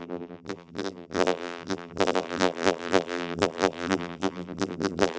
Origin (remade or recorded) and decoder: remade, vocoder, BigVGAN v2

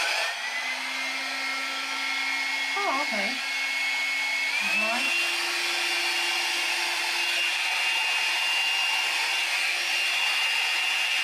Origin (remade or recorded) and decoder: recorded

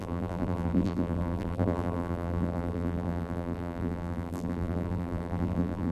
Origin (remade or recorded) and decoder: remade, vocoder, BigVGAN v2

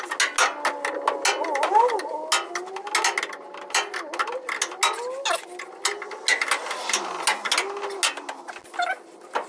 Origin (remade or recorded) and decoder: recorded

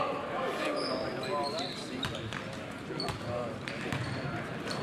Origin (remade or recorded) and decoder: remade, vocoder, BigVGAN v2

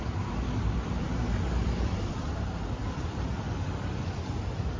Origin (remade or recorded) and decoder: remade, vocoder, BigVGAN v2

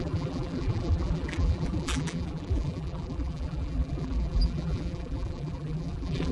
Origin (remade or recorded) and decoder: remade, vocoder, BigVGAN v2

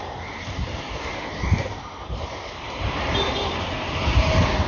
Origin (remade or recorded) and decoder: remade, vocoder, BigVGAN v2